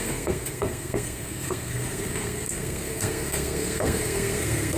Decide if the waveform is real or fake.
fake